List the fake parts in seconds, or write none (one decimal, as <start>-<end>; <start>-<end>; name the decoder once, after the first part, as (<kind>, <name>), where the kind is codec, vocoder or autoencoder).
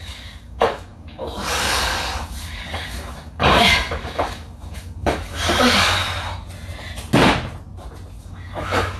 0.0-6.0 (codec, DAC); 8.2-9.0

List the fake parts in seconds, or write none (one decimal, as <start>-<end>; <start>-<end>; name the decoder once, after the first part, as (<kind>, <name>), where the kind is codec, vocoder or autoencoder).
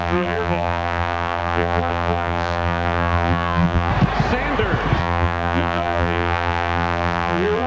0.0-3.9 (vocoder, BigVGAN v2); 5.0-7.7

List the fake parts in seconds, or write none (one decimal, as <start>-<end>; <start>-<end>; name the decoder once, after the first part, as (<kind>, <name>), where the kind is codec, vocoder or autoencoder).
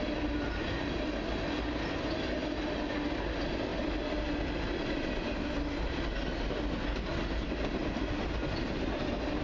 none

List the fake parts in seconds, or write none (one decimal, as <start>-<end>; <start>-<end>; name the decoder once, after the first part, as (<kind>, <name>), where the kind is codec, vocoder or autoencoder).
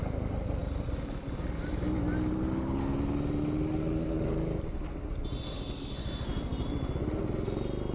none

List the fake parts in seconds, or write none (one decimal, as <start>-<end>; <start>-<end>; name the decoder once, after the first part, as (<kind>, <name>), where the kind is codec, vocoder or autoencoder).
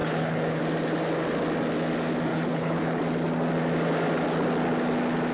0.0-0.6 (codec, HILCodec); 2.3-3.0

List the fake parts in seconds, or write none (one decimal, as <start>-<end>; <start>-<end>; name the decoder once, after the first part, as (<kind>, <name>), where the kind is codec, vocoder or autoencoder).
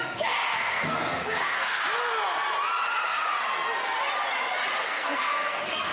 0.0-1.8 (codec, SNAC); 4.8-5.9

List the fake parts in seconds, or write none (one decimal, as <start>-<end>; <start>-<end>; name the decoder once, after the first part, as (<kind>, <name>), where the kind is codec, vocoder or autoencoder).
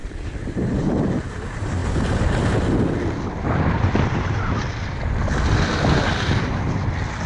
0.0-1.1 (vocoder, BigVGAN v2)